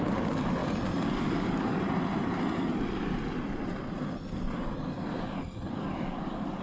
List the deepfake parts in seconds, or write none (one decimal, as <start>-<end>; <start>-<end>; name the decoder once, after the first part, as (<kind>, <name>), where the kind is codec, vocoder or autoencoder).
0.0-0.6 (codec, DAC); 1.1-1.7; 5.7-6.6